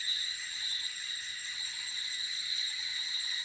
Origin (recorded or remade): remade